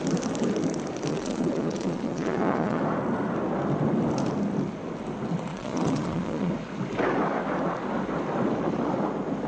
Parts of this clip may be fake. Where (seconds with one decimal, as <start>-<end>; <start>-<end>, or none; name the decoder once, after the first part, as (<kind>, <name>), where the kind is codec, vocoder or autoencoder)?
1.1-2.8 (vocoder, Vocos); 5.5-6.5